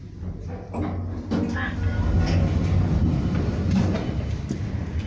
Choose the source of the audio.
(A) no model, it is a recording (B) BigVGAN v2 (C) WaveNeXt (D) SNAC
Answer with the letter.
A